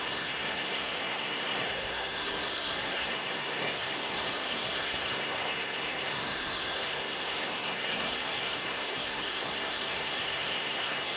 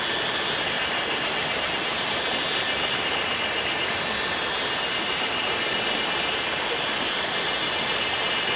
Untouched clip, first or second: second